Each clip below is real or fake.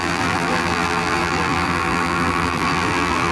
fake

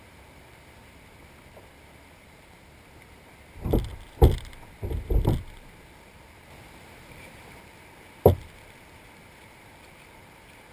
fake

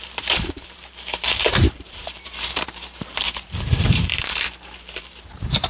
fake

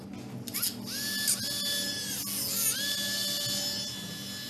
real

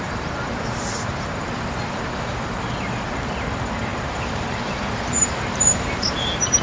fake